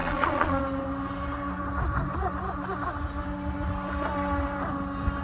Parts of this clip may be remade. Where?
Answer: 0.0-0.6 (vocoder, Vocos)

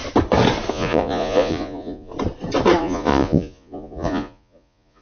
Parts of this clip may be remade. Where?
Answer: 0.7-2.1 (vocoder, Vocos); 2.8-5.0

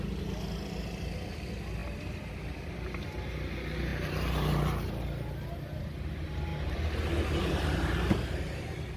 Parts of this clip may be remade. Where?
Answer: none

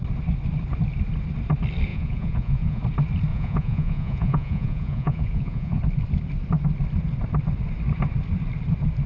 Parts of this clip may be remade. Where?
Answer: 1.9-2.8 (vocoder, Vocos); 3.3-5.8

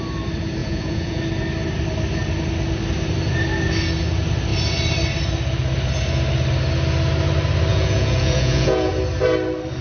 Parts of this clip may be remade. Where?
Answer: 0.6-1.2 (vocoder, Vocos); 7.7-8.9

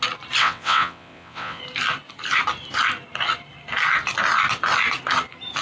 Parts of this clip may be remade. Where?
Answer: 0.4-1.6 (vocoder, WaveNeXt)